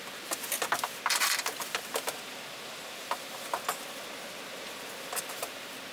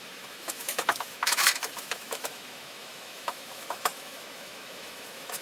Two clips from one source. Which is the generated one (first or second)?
second